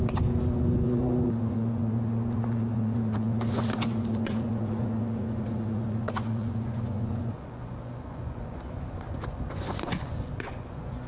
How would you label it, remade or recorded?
remade